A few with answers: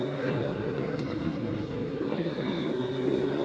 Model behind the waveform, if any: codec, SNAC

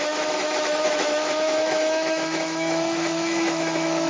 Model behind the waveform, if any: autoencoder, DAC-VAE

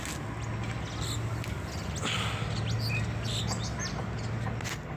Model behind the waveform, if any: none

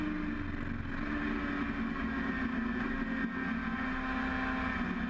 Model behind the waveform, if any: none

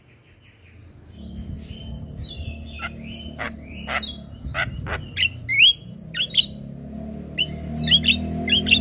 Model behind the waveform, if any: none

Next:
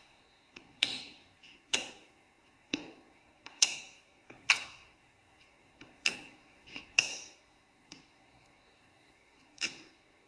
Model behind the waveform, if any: codec, SNAC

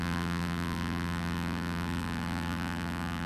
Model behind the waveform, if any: vocoder, BigVGAN v2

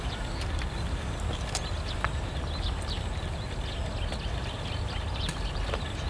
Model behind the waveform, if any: none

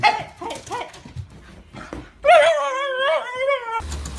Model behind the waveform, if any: none